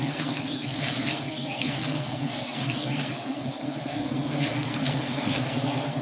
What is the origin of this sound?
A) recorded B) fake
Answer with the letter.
B